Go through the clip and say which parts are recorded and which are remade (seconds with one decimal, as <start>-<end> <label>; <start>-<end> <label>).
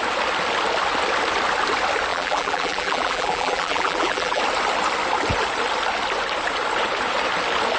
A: 0.0-2.1 recorded; 2.1-4.4 remade; 4.4-7.8 recorded